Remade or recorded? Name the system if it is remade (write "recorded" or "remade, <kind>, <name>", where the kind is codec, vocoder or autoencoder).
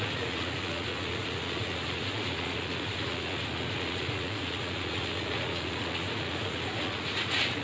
remade, vocoder, Vocos